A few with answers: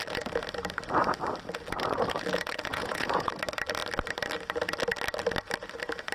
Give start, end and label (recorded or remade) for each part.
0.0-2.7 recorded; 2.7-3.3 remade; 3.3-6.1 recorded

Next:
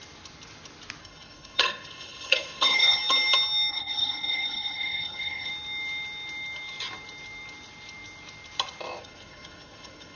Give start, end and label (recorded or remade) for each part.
0.0-1.0 recorded; 1.0-3.0 remade; 3.0-3.7 recorded; 3.7-5.5 remade; 5.5-9.0 recorded; 9.0-10.2 remade

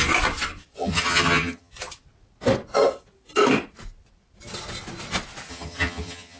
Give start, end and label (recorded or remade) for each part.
0.0-0.8 recorded; 0.8-1.7 remade; 1.7-5.5 recorded; 5.5-6.4 remade

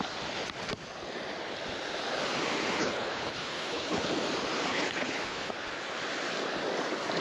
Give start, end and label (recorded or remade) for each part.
0.0-2.8 recorded; 2.8-4.1 remade; 4.1-4.7 recorded; 4.7-5.5 remade; 5.5-7.2 recorded

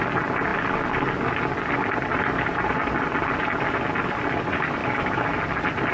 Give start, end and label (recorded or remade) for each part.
0.0-4.8 recorded; 4.8-5.4 remade; 5.4-5.9 recorded